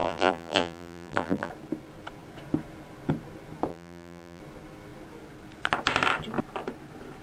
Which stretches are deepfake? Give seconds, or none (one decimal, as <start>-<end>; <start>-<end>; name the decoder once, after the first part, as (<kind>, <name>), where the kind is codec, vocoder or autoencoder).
0.0-1.5 (vocoder, BigVGAN v2); 3.7-4.4